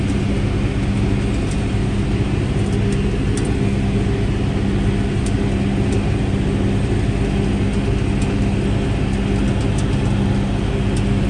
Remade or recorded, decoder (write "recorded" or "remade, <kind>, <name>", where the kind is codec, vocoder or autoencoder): recorded